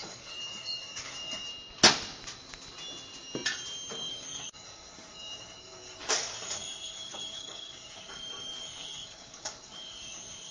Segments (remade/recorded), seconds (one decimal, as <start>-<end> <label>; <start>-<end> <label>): 0.0-1.5 remade; 1.5-4.1 recorded; 4.1-10.5 remade